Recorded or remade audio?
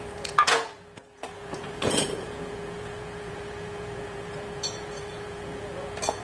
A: remade